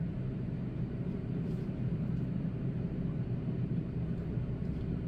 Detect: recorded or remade remade